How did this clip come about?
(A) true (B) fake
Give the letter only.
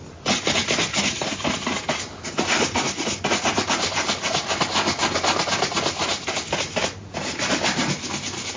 A